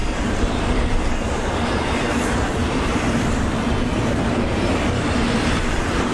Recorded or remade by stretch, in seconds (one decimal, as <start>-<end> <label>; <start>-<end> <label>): 0.0-6.1 remade